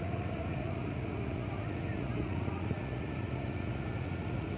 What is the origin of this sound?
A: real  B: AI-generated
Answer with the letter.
B